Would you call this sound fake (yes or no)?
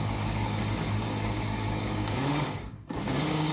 yes